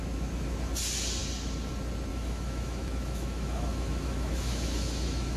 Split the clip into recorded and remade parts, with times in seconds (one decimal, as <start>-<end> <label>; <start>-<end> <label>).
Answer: 0.0-2.1 recorded; 2.1-5.4 remade